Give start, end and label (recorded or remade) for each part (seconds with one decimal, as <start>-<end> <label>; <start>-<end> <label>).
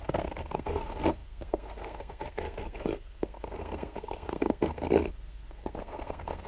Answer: 0.0-6.5 remade